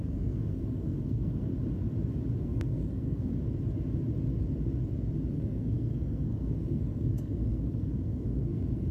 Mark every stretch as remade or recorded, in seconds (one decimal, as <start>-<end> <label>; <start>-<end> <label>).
0.0-1.5 remade; 1.5-2.4 recorded; 2.4-3.3 remade; 3.3-5.3 recorded; 5.3-8.9 remade